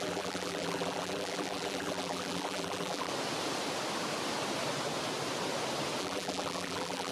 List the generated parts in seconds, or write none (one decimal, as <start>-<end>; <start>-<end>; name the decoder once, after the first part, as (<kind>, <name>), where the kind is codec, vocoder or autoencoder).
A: 0.0-3.1 (vocoder, BigVGAN v2); 6.0-7.1